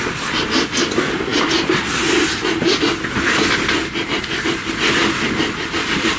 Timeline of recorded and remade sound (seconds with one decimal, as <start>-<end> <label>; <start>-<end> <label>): 0.0-6.2 recorded